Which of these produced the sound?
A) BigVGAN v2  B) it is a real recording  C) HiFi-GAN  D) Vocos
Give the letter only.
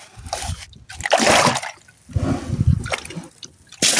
B